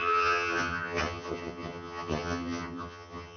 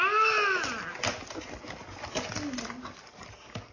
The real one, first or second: second